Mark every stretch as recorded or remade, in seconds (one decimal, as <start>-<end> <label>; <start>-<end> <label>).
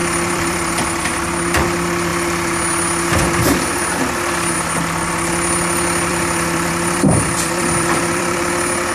0.0-0.7 remade; 0.7-6.1 recorded; 6.1-8.5 remade; 8.5-8.9 recorded